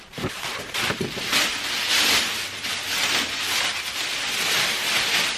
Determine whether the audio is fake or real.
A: real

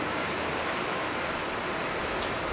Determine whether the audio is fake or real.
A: real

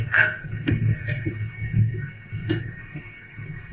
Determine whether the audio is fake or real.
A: fake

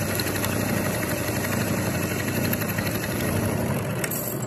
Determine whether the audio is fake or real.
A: fake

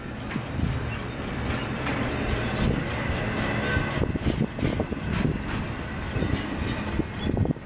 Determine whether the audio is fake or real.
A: real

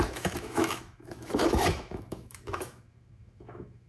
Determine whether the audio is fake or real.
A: fake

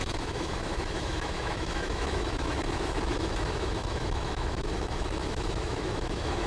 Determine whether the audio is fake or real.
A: fake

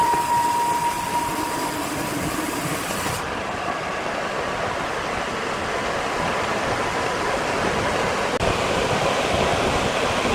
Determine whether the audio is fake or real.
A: real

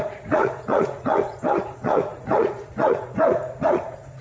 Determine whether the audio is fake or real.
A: fake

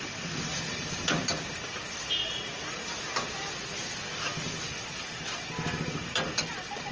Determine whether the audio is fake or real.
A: real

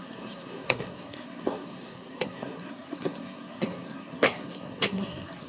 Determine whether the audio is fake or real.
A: fake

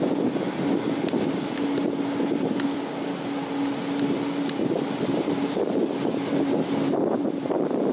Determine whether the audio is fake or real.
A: real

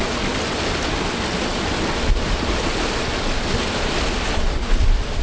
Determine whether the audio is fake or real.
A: real